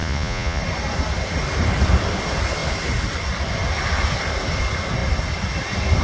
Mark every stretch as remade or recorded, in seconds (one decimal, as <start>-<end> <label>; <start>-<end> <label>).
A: 0.0-0.6 remade; 0.6-6.0 recorded